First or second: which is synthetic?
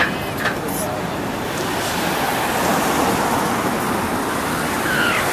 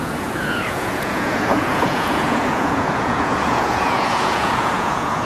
second